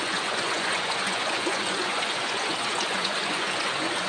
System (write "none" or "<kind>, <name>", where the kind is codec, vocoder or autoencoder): vocoder, Vocos